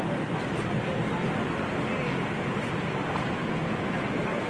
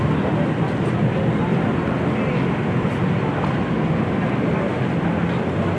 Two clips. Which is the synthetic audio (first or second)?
first